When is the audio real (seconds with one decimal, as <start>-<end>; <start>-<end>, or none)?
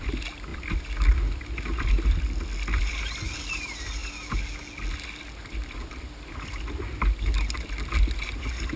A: 0.0-8.8